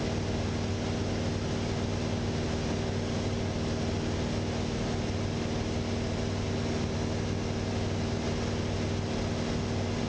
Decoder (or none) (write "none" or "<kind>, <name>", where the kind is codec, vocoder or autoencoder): none